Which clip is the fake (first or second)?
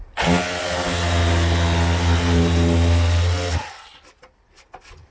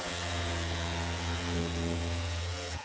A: second